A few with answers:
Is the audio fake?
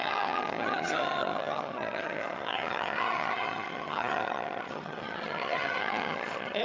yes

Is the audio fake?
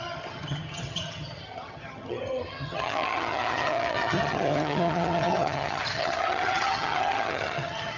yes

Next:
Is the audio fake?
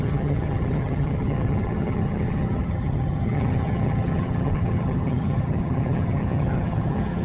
yes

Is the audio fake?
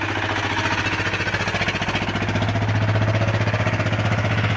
no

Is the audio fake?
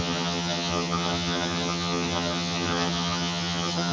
yes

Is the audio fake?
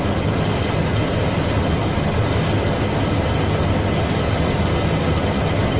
no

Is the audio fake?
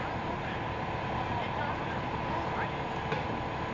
no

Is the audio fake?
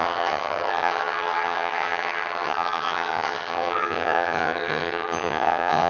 yes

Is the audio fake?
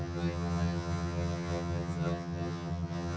yes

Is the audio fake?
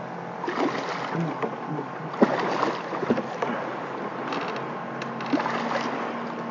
no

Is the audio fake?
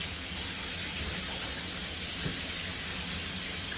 no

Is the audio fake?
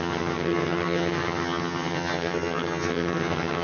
yes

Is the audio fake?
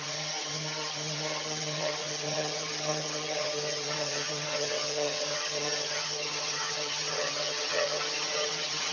yes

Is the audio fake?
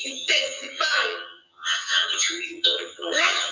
yes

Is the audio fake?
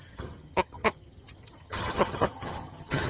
yes